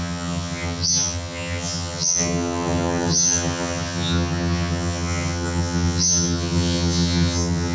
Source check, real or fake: fake